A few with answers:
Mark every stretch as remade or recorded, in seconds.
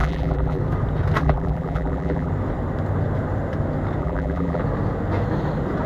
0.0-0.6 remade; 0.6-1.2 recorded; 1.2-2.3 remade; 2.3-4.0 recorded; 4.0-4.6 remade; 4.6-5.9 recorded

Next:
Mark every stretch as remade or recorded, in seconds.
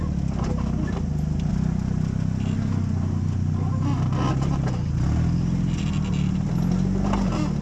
0.0-7.6 recorded